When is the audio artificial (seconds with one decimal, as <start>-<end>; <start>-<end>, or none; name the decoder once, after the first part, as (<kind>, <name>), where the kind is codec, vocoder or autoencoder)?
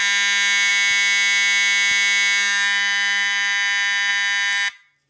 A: none